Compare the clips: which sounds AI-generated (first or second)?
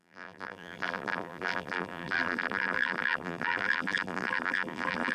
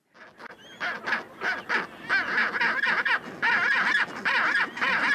first